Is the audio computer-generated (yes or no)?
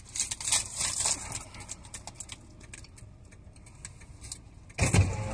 no